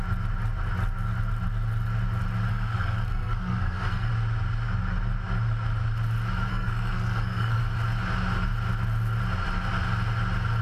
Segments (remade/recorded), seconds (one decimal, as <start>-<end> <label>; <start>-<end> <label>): 0.0-2.5 recorded; 2.5-4.1 remade; 4.1-6.5 recorded; 6.5-7.6 remade; 7.6-10.6 recorded